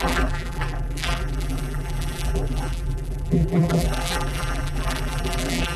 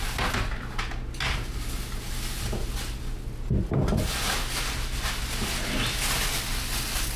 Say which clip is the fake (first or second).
first